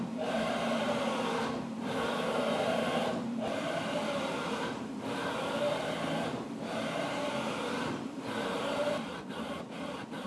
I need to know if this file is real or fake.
fake